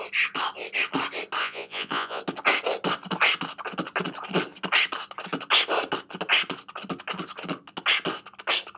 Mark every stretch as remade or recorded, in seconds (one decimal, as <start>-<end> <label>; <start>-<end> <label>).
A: 0.0-1.4 recorded; 1.4-2.2 remade; 2.2-8.8 recorded